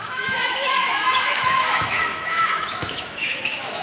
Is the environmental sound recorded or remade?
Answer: remade